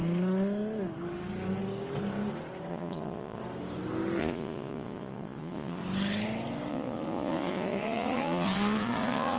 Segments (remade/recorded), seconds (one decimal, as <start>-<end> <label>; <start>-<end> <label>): 0.0-2.7 recorded; 2.7-3.4 remade; 3.4-4.2 recorded; 4.2-5.8 remade; 5.8-6.7 recorded; 6.7-9.4 remade